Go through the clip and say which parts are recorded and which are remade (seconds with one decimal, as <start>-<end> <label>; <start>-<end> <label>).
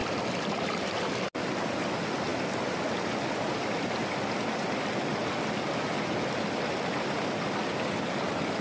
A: 0.0-8.6 recorded